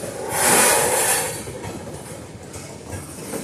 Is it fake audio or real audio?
real